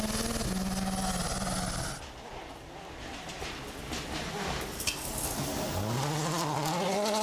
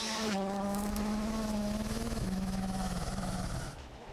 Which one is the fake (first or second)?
second